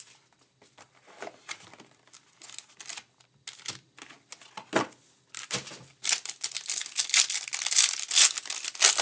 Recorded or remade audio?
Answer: recorded